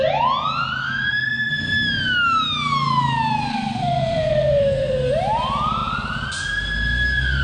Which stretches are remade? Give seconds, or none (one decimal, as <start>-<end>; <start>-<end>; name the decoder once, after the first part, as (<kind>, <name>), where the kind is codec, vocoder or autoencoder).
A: 0.8-1.5 (codec, SNAC); 3.5-5.1